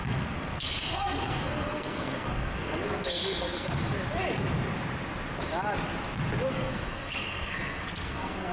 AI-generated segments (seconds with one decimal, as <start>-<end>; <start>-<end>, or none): 0.0-3.8; 6.5-8.5